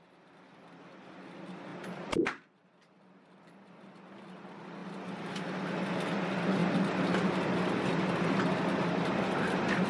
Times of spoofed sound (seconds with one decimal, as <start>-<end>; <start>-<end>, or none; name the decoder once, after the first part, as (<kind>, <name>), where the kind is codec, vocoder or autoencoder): 1.7-2.7 (vocoder, BigVGAN v2); 6.6-8.6